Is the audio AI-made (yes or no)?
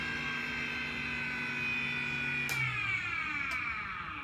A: no